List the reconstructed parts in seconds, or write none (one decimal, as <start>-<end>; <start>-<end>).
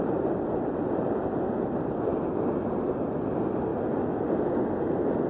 none